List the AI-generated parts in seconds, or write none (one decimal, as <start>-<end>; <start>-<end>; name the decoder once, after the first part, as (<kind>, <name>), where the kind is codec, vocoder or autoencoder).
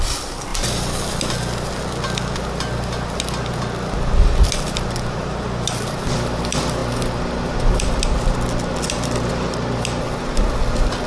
0.5-1.2 (vocoder, BigVGAN v2)